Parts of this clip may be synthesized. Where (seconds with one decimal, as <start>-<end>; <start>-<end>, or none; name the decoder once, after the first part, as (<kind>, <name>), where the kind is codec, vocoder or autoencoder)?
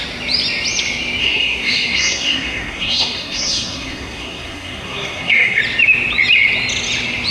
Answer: 1.2-5.6 (codec, SNAC)